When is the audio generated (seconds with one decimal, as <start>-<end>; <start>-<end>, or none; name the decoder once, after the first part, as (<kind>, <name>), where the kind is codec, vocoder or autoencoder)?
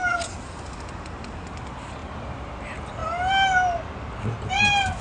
2.0-2.6 (vocoder, BigVGAN v2)